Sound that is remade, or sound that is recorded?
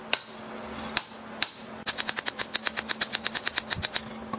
recorded